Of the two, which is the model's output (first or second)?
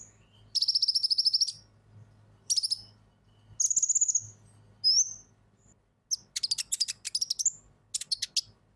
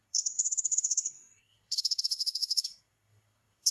second